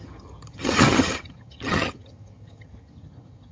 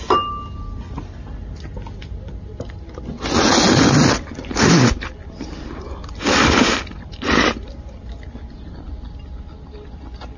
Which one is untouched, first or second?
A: second